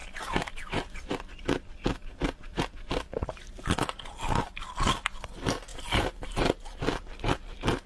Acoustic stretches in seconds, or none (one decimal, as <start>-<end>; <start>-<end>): 0.0-7.9